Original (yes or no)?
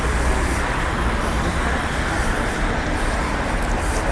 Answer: yes